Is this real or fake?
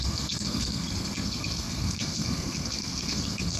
fake